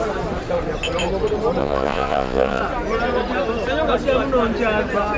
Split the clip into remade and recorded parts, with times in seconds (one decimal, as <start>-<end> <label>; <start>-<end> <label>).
0.0-1.6 recorded; 1.6-2.6 remade; 2.6-5.2 recorded